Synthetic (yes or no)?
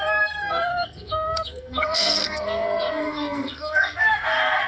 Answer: yes